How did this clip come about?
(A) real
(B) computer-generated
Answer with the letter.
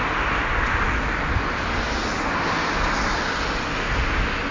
A